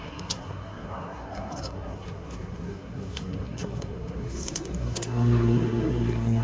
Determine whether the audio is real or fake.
fake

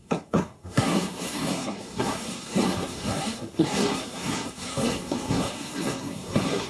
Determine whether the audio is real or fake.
fake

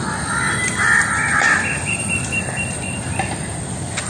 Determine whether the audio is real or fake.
real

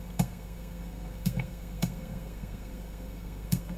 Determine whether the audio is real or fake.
fake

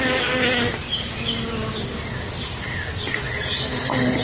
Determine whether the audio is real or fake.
real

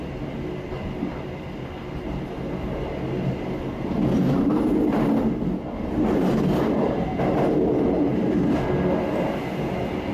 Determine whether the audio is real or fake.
real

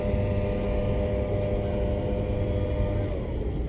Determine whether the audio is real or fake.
real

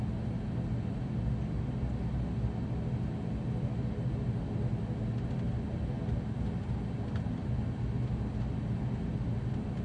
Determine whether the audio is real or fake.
real